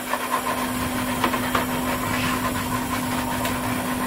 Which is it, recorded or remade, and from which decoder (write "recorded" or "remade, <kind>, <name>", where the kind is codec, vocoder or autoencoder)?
recorded